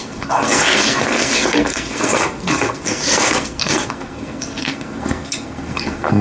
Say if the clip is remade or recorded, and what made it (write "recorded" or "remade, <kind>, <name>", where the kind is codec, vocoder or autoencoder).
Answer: remade, codec, SNAC